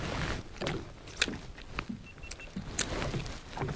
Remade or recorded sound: recorded